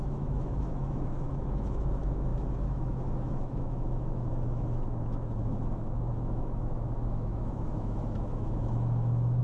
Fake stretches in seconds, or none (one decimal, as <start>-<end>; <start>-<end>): 0.0-9.4